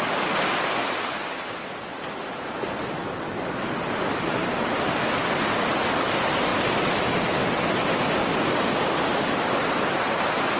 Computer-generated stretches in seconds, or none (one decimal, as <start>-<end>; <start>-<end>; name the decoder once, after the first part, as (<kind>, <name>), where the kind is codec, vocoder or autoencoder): none